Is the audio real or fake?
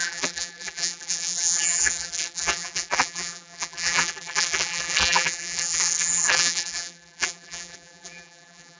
fake